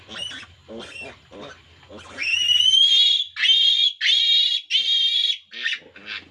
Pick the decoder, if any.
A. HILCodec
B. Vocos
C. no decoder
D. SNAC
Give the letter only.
C